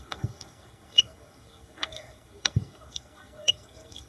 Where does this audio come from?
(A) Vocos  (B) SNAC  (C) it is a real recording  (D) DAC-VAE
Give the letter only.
B